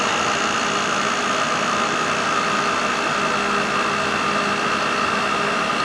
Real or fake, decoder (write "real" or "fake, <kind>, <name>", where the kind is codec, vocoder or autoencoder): real